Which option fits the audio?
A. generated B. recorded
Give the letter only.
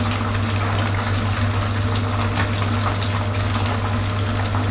B